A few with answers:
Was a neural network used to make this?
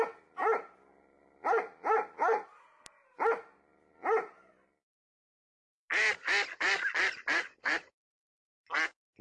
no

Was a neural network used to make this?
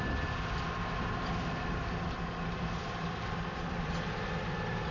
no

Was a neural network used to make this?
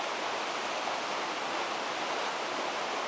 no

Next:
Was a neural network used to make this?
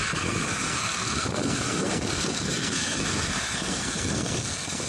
yes